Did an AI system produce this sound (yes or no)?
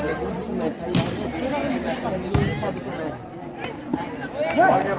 no